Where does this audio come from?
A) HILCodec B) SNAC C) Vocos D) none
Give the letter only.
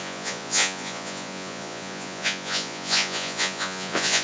C